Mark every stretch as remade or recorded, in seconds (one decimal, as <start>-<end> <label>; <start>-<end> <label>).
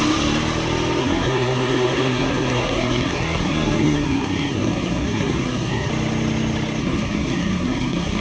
0.0-1.0 recorded; 1.0-5.9 remade; 5.9-6.8 recorded; 6.8-8.2 remade